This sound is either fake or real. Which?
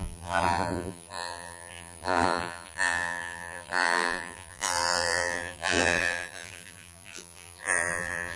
fake